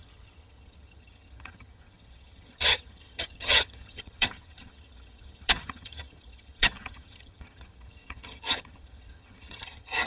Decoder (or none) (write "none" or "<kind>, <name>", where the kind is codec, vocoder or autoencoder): vocoder, HiFi-GAN